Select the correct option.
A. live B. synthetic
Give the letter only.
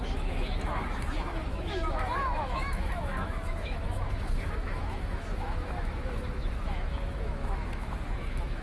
B